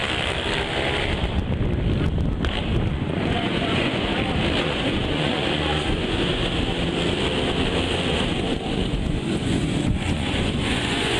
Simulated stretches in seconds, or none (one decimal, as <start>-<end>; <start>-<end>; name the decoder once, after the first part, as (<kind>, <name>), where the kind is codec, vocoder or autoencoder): 2.9-4.1 (vocoder, Vocos); 4.6-6.4; 8.1-11.2